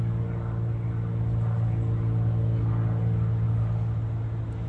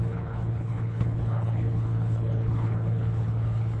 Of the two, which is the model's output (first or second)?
second